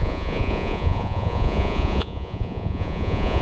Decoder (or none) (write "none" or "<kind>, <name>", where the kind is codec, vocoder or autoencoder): vocoder, Vocos